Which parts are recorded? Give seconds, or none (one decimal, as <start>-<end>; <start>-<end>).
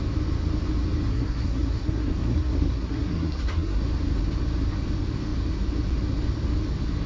0.0-1.1; 3.8-7.1